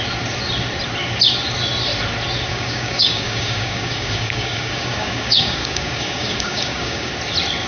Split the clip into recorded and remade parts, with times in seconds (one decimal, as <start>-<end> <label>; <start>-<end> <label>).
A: 0.0-2.5 recorded; 2.5-7.1 remade; 7.1-7.7 recorded